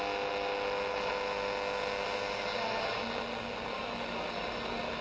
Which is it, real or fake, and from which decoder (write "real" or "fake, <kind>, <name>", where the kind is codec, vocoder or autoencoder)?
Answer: real